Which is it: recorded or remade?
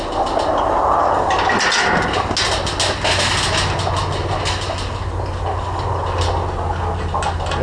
recorded